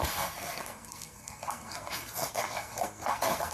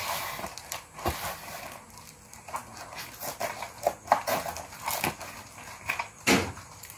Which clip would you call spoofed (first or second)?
first